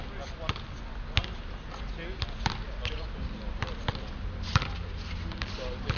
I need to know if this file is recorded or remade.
recorded